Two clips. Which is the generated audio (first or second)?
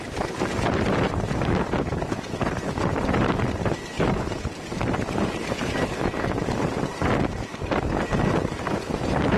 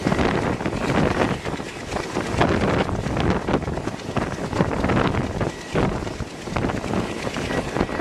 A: first